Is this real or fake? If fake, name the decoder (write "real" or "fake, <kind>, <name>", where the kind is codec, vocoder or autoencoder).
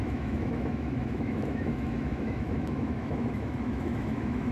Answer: fake, autoencoder, DAC-VAE